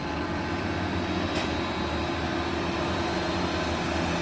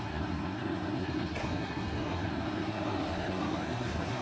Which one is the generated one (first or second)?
second